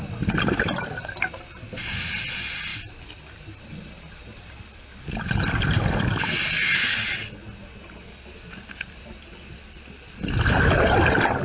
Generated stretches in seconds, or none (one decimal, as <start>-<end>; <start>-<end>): none